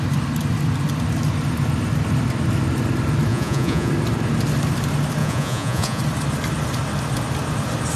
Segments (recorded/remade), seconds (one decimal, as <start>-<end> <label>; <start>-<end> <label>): 0.0-3.3 recorded; 3.3-3.9 remade; 3.9-5.2 recorded; 5.2-6.0 remade; 6.0-8.0 recorded